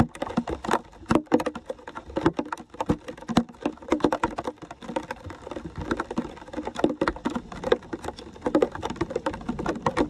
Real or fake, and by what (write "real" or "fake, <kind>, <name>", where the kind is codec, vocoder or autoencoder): real